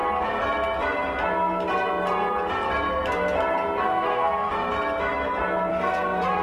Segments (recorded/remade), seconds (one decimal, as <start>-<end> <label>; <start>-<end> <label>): 0.0-3.8 recorded; 3.8-4.5 remade; 4.5-5.7 recorded; 5.7-6.4 remade